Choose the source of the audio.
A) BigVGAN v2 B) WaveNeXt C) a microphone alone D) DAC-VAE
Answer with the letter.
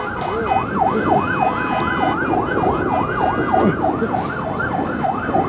C